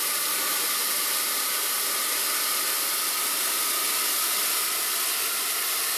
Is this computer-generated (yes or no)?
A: no